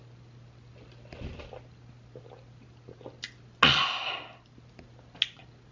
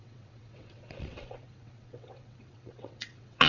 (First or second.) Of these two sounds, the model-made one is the second